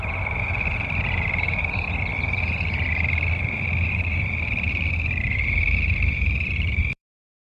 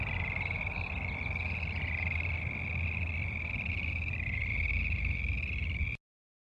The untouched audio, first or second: second